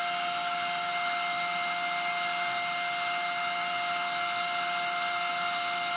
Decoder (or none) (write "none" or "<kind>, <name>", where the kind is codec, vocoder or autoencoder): none